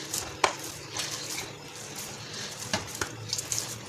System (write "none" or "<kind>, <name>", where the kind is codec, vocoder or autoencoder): none